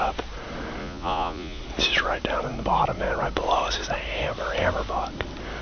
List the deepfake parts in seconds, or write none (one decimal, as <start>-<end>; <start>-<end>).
0.8-1.6

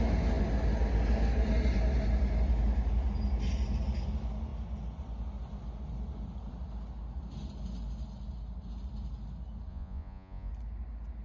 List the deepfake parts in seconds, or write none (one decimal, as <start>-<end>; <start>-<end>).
9.7-10.5

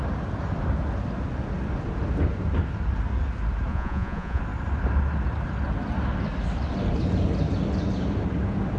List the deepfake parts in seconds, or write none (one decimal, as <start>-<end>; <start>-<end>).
3.7-4.4

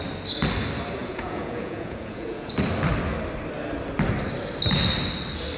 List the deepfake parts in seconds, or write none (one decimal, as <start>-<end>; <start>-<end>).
1.0-2.5

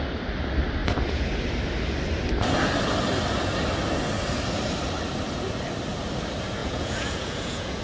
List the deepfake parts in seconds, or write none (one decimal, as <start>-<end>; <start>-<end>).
6.6-7.8

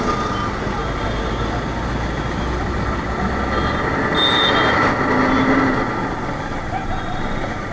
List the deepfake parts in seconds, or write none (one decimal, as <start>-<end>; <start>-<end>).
none